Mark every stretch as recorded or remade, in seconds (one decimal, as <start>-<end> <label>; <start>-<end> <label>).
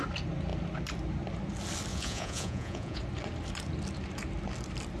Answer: 0.0-1.9 recorded; 1.9-3.0 remade; 3.0-5.0 recorded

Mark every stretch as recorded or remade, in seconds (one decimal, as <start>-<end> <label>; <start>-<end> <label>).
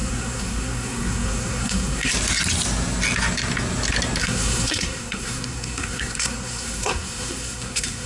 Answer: 0.0-2.1 remade; 2.1-4.2 recorded; 4.2-8.1 remade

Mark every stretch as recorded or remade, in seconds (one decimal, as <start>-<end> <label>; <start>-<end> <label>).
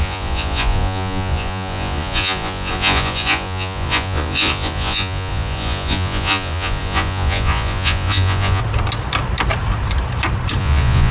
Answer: 0.0-8.6 remade; 8.6-10.6 recorded; 10.6-11.1 remade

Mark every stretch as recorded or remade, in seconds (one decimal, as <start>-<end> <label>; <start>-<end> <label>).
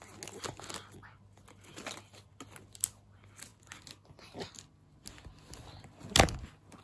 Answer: 0.0-6.8 recorded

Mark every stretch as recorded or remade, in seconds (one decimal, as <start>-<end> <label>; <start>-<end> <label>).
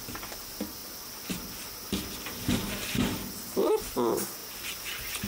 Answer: 0.0-5.3 recorded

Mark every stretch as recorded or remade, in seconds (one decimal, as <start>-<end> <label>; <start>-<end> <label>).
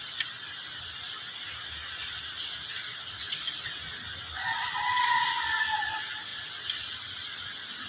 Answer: 0.0-7.9 recorded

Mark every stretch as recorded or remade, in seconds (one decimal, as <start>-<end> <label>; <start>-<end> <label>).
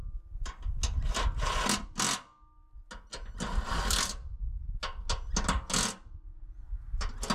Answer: 0.0-7.3 recorded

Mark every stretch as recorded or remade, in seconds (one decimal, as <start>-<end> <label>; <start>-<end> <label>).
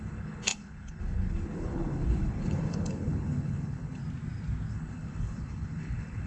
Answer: 0.0-4.0 remade; 4.0-4.7 recorded; 4.7-6.3 remade